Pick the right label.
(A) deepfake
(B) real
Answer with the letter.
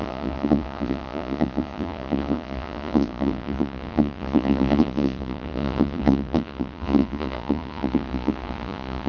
A